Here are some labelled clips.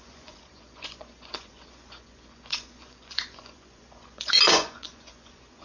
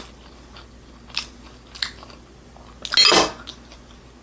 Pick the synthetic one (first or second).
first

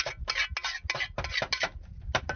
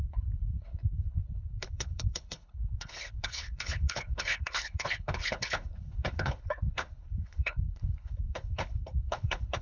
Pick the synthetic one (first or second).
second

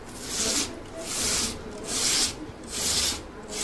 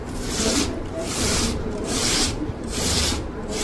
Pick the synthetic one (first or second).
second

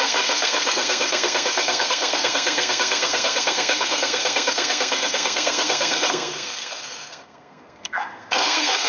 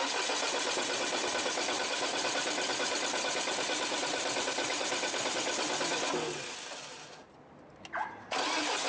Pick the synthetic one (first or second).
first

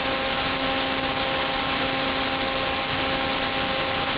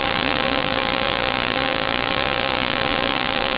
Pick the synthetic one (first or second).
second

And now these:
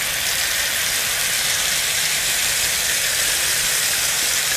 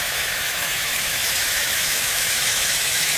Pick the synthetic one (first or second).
second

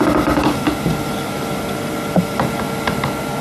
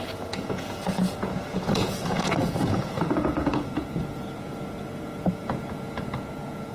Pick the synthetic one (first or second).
second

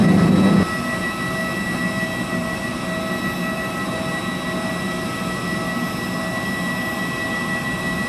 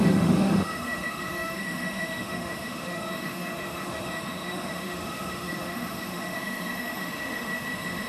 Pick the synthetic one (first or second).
second